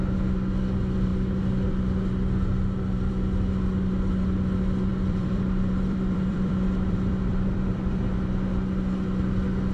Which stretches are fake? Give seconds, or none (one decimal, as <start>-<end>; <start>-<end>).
4.9-8.0